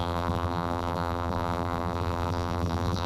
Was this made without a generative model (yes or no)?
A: no